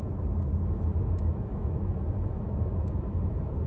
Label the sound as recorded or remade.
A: remade